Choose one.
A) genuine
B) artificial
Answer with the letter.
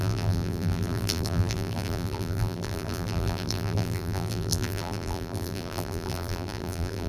B